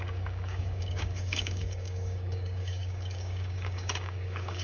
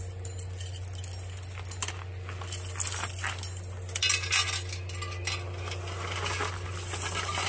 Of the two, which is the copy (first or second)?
first